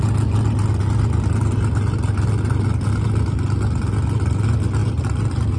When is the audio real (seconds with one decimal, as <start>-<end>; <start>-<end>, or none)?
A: 0.0-4.8